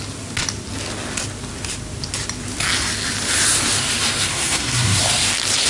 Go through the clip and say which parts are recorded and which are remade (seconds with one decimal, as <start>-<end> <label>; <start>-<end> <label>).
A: 0.0-4.3 recorded; 4.3-5.0 remade; 5.0-5.7 recorded